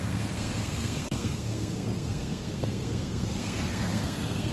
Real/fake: fake